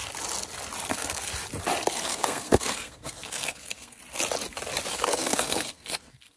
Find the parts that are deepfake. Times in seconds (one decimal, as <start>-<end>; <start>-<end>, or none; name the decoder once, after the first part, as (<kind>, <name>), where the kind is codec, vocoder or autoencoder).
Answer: 0.9-1.3 (codec, SNAC); 1.9-4.0; 4.9-6.4